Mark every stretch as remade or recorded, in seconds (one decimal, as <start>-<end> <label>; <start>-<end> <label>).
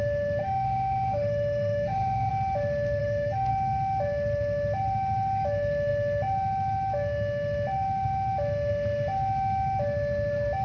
0.0-0.4 recorded; 0.4-2.3 remade; 2.3-3.0 recorded; 3.0-3.5 remade; 3.5-10.6 recorded